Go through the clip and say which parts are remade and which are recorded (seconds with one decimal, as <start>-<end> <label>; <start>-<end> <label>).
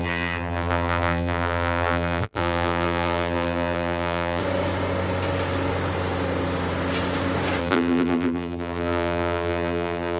0.0-4.4 remade; 4.4-7.6 recorded; 7.6-10.2 remade